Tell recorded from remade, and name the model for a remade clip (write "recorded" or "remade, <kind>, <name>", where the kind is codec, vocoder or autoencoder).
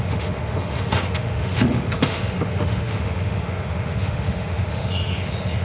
remade, autoencoder, DAC-VAE